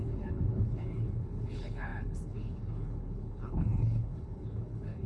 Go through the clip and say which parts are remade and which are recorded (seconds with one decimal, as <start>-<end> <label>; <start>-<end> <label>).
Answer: 0.0-5.1 remade